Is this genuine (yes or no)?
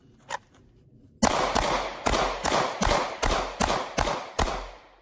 yes